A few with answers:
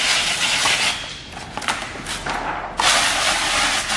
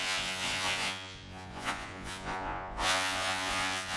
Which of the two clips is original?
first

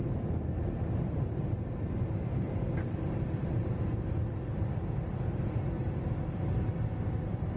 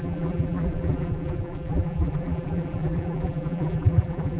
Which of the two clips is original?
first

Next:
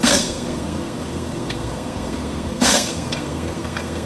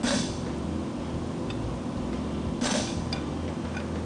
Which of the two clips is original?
second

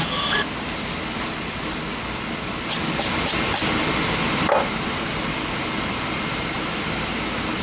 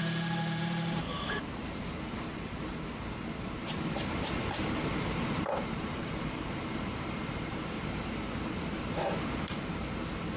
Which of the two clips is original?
first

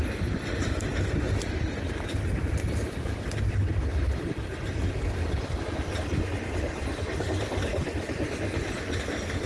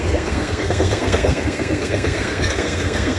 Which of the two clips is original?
first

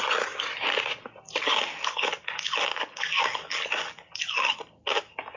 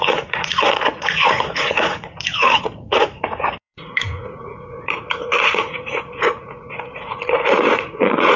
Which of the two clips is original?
first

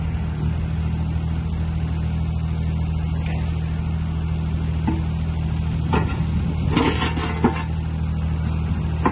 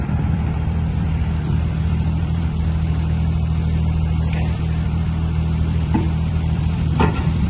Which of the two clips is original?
first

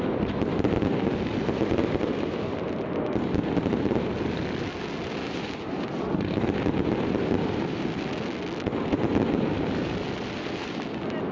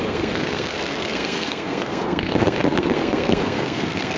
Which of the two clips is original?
first